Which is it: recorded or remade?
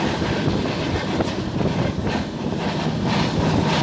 recorded